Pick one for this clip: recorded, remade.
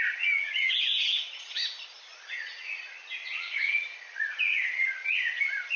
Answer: remade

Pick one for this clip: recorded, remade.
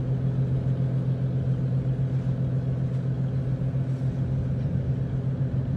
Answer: recorded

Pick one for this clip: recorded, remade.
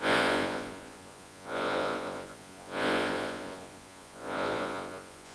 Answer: remade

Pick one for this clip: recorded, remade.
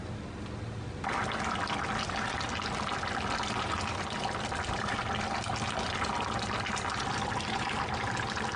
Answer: recorded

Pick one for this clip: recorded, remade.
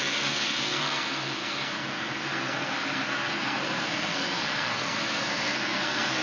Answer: remade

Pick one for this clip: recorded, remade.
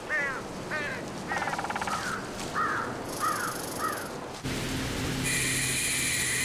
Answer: recorded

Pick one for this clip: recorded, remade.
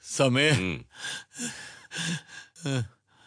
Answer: recorded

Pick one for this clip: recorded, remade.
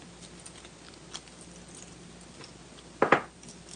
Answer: recorded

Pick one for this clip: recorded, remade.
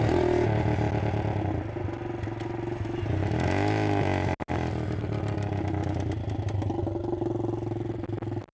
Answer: recorded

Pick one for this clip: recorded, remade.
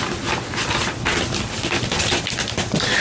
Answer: recorded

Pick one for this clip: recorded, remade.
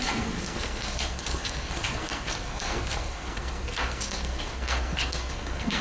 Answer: remade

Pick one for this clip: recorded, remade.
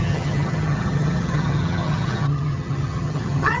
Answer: remade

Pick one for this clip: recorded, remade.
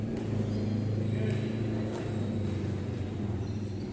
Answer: recorded